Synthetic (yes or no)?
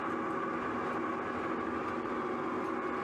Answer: no